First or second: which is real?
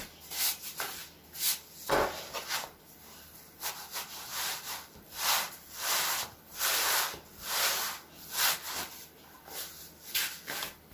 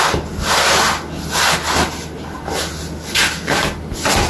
second